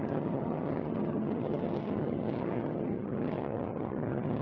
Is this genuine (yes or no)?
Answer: no